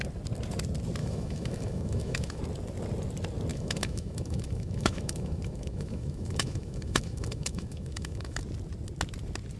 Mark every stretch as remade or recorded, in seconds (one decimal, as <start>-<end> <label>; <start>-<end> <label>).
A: 0.0-1.0 recorded; 1.0-2.4 remade; 2.4-3.5 recorded; 3.5-8.4 remade; 8.4-9.6 recorded